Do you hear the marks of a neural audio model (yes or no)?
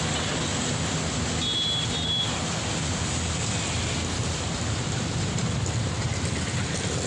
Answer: no